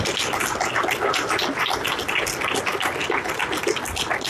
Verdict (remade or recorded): recorded